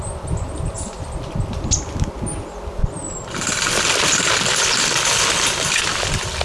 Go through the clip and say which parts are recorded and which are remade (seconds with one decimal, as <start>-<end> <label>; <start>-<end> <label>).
0.0-2.8 recorded; 2.8-6.0 remade; 6.0-6.4 recorded